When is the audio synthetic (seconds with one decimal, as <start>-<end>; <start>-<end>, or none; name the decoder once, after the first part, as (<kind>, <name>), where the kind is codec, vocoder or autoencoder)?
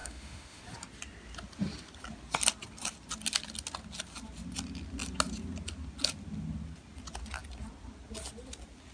0.0-0.6 (autoencoder, DAC-VAE)